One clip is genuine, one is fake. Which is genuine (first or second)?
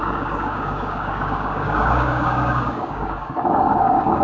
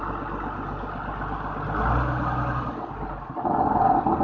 second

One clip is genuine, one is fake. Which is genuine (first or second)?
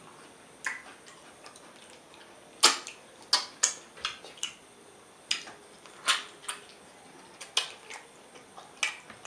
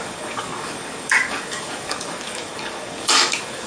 first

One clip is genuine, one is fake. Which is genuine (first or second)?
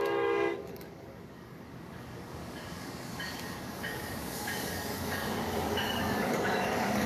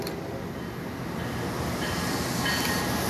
second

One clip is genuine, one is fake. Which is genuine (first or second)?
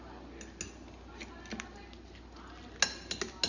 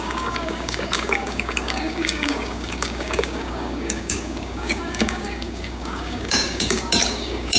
first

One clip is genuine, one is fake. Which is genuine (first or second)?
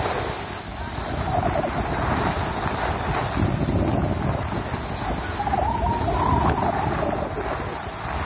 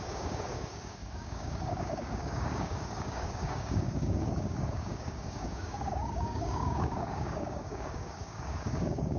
first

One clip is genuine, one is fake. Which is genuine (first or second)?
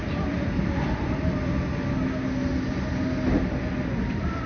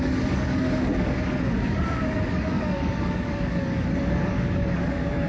first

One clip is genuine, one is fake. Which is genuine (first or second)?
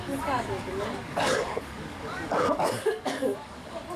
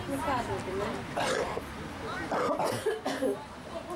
second